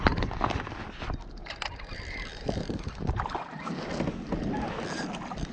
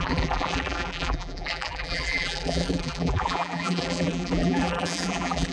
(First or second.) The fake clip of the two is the second